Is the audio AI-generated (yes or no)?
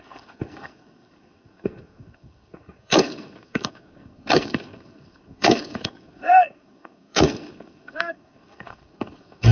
yes